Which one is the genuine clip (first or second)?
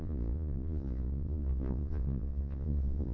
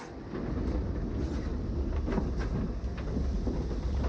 second